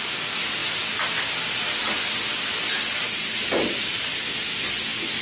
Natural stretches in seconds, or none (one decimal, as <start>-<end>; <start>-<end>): 0.6-3.7; 4.2-4.8